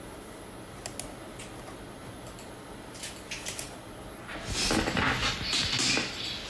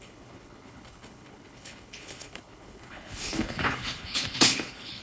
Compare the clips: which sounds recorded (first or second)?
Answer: first